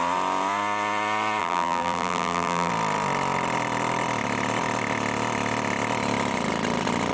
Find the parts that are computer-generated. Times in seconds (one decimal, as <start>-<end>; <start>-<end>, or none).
1.4-2.7